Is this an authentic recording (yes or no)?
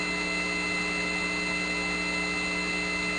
yes